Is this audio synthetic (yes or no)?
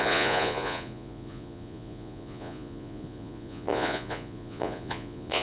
yes